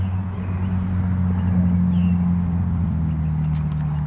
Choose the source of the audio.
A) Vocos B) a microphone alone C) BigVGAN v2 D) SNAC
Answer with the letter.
B